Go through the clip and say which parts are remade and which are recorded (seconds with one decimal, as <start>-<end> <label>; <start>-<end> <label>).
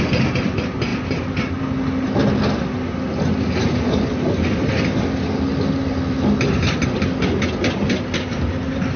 0.0-9.0 recorded